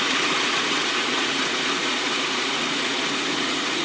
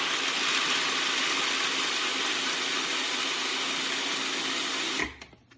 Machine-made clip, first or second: first